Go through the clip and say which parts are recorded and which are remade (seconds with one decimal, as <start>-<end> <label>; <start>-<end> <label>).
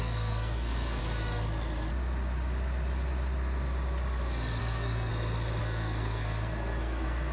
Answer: 0.0-1.0 remade; 1.0-4.6 recorded; 4.6-5.1 remade; 5.1-5.6 recorded; 5.6-7.3 remade